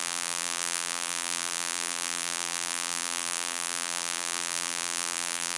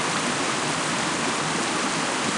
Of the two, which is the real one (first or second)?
second